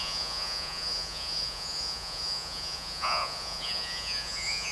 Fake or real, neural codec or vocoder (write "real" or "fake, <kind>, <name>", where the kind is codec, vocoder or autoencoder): fake, vocoder, Vocos